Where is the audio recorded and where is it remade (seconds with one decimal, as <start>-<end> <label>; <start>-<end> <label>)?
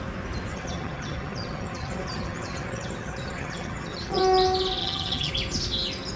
0.0-0.5 recorded; 0.5-4.2 remade; 4.2-4.8 recorded; 4.8-5.3 remade; 5.3-6.2 recorded